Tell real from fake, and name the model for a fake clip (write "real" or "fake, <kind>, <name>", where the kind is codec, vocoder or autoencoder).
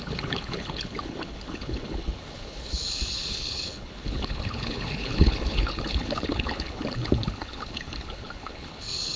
fake, codec, HILCodec